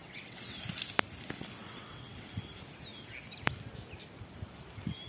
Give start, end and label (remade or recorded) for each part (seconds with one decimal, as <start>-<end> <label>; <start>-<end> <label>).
0.0-0.6 remade; 0.6-1.6 recorded; 1.6-2.3 remade; 2.3-5.1 recorded